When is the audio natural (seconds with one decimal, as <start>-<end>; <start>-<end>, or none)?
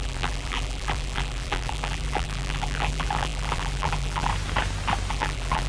4.3-5.1